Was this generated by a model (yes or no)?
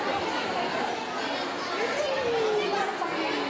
no